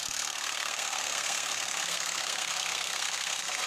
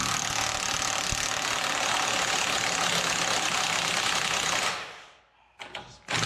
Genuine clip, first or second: second